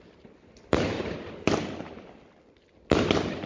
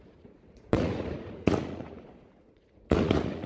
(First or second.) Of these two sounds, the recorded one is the first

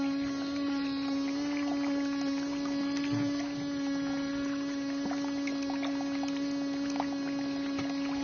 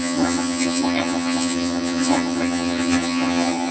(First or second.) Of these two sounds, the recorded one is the first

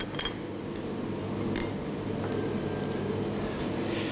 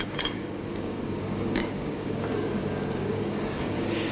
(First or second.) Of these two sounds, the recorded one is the first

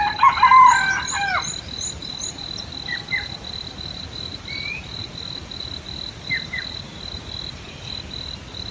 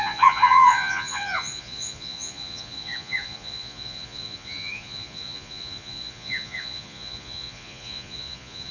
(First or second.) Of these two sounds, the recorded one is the first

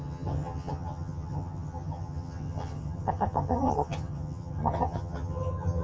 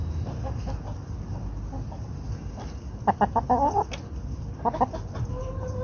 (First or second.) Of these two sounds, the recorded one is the second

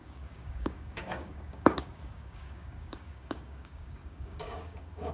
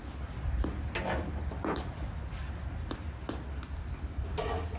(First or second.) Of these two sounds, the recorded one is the second